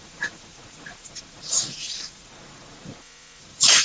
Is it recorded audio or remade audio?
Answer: remade